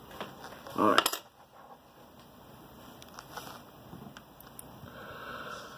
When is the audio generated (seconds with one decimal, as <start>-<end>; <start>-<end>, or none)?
none